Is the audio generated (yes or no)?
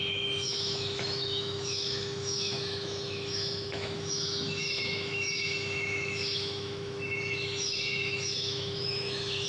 yes